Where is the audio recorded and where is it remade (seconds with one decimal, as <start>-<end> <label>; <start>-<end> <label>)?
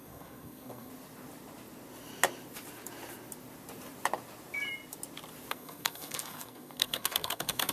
0.0-0.9 remade; 0.9-5.5 recorded; 5.5-7.7 remade